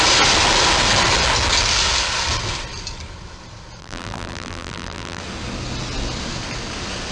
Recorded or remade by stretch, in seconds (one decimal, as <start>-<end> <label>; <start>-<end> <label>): 0.0-3.8 recorded; 3.8-5.2 remade; 5.2-7.1 recorded